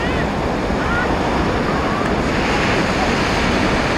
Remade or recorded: recorded